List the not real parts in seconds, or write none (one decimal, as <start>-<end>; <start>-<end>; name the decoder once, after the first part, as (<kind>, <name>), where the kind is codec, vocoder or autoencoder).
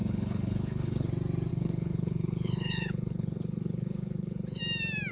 0.0-1.1 (codec, HILCodec); 1.5-4.6